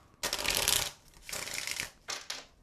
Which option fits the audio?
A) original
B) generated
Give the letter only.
A